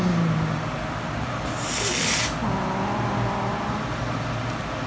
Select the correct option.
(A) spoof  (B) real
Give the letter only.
B